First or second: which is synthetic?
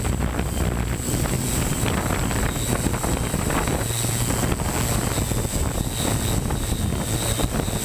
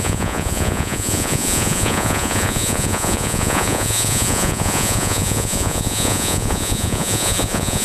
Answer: second